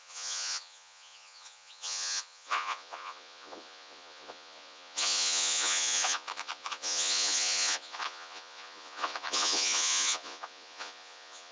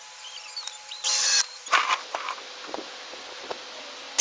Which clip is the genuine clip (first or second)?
second